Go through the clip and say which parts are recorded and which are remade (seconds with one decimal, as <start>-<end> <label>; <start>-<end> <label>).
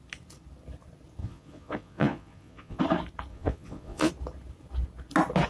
0.0-1.2 recorded; 1.2-2.8 remade; 2.8-3.3 recorded; 3.3-4.1 remade; 4.1-5.5 recorded